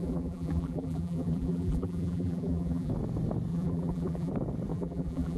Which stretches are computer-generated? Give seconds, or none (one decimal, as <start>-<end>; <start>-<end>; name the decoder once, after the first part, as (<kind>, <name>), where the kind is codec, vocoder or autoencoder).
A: 0.0-2.9 (vocoder, BigVGAN v2); 3.5-4.3; 4.7-5.4